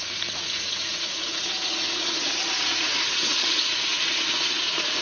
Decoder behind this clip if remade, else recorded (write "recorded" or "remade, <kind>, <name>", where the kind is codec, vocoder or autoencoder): remade, vocoder, Vocos